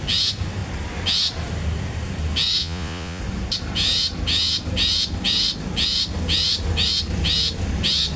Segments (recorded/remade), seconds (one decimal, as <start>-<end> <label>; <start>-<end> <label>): 0.0-2.6 recorded; 2.6-3.2 remade; 3.2-8.2 recorded